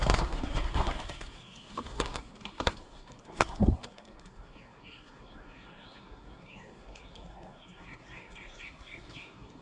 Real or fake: fake